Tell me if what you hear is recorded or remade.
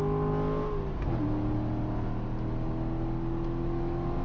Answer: recorded